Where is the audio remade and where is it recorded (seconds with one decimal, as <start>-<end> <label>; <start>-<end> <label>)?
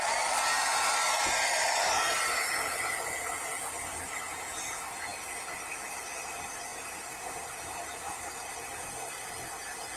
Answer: 0.0-10.0 recorded